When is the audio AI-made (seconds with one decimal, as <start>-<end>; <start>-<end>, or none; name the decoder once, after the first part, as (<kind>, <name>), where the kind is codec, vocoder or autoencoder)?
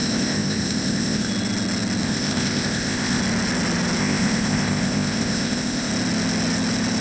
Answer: 0.0-1.3 (codec, ZipCodec); 2.0-3.2; 4.0-5.9